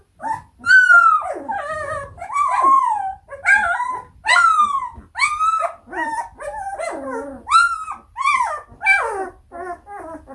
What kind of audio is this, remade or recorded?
recorded